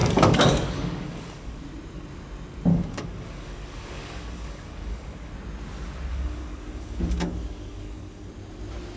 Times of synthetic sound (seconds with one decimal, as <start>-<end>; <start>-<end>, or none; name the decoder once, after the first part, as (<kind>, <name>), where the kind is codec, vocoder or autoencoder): 0.0-1.6 (codec, DAC); 2.7-5.3; 6.1-8.3